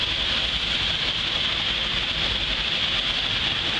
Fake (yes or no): no